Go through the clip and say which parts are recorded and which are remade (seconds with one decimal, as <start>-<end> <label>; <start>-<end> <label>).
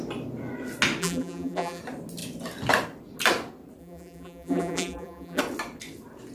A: 0.0-1.0 recorded; 1.0-1.8 remade; 1.8-3.8 recorded; 3.8-5.4 remade; 5.4-6.3 recorded